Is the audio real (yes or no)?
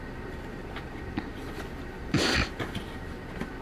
no